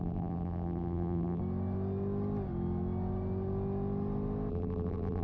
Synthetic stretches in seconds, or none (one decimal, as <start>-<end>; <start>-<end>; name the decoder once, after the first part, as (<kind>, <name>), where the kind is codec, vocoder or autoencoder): 0.0-1.4 (vocoder, BigVGAN v2); 4.5-5.2

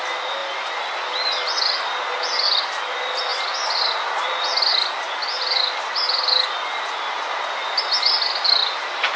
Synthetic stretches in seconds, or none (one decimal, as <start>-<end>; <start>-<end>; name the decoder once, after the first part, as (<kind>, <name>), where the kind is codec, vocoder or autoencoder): 0.4-2.0 (vocoder, BigVGAN v2); 8.6-9.2

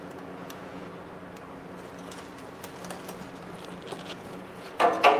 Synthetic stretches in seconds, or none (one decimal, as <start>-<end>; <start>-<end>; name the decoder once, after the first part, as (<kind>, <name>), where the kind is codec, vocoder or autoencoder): 0.0-0.9 (vocoder, Vocos); 4.0-5.2

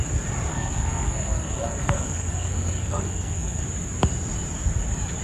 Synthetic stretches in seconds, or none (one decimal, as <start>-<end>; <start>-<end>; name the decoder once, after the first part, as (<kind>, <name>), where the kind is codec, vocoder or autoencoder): 0.5-3.6 (codec, SNAC)

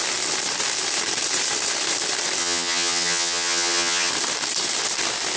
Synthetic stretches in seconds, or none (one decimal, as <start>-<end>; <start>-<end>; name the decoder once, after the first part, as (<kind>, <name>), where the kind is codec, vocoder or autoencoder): 2.4-4.1 (vocoder, HiFi-GAN)

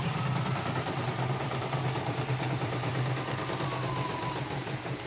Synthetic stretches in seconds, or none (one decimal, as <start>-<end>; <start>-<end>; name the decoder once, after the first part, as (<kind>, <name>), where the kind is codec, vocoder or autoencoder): 0.0-2.9 (vocoder, BigVGAN v2)